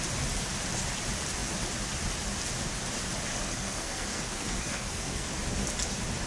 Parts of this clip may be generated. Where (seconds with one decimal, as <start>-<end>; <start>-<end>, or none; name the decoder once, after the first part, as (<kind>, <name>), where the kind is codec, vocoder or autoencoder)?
3.3-5.3 (codec, SNAC)